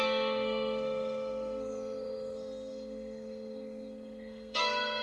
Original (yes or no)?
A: no